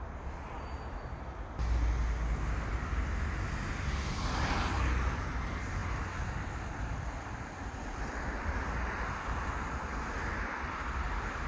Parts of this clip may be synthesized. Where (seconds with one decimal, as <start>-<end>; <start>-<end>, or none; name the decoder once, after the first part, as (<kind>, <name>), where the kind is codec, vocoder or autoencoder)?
none